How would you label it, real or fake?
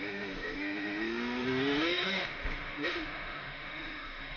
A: fake